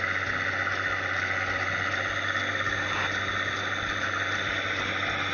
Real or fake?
real